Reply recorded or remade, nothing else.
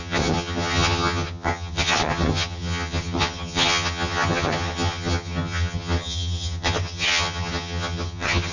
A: remade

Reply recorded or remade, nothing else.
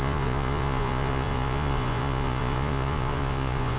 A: remade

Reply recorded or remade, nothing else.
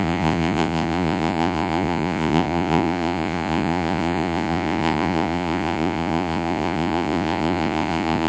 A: remade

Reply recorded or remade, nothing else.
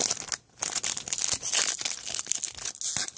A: recorded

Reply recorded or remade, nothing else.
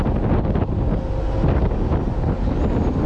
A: recorded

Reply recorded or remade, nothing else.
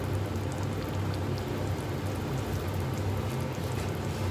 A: recorded